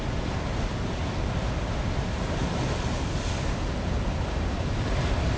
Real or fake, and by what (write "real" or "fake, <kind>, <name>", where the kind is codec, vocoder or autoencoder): real